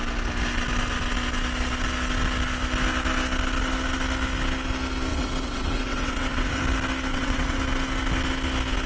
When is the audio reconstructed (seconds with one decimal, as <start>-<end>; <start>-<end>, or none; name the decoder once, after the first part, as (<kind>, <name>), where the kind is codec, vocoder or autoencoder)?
5.1-6.6 (vocoder, WaveNeXt); 7.1-7.6